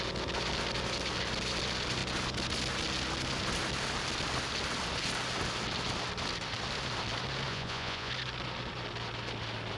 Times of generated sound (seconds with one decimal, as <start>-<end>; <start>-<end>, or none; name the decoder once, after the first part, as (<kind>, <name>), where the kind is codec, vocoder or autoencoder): 7.5-8.1 (vocoder, Vocos)